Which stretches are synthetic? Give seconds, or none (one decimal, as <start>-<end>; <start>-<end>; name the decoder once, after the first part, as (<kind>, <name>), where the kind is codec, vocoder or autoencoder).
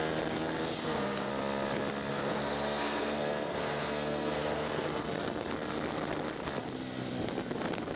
0.8-1.3 (codec, SNAC); 2.1-5.5